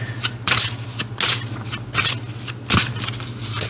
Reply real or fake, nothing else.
real